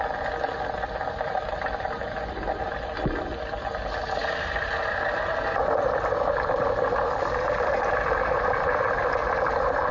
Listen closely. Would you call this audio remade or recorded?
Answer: recorded